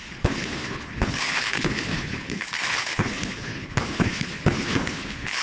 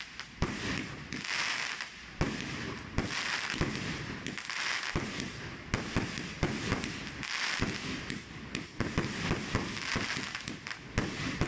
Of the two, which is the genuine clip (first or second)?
second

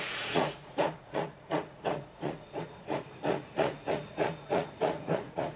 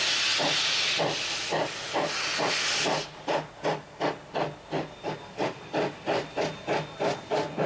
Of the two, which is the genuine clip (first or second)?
second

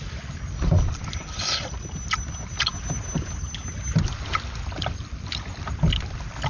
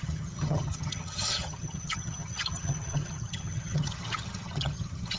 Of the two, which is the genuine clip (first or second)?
first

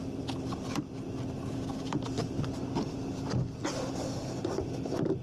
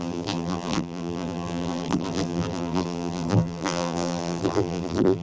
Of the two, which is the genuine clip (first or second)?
first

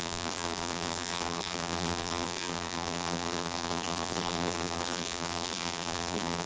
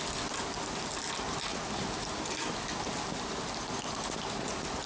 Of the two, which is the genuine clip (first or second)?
second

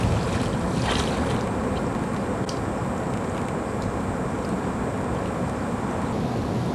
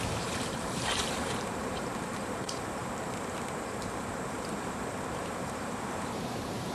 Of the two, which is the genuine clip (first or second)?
first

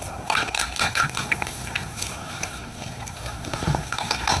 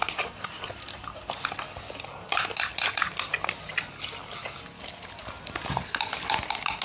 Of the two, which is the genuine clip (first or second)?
second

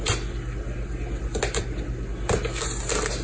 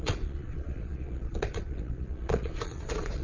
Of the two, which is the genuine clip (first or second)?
first